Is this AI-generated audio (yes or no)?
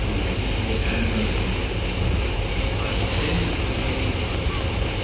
no